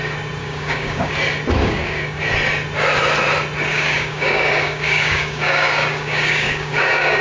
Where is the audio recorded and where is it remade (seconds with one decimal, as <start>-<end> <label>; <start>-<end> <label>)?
0.0-0.4 recorded; 0.4-1.1 remade; 1.1-1.6 recorded; 1.6-2.2 remade; 2.2-3.7 recorded; 3.7-7.2 remade